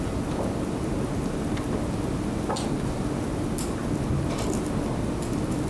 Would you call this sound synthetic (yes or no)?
no